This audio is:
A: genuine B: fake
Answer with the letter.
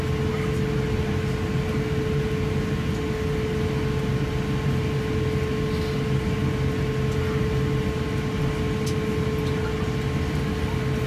A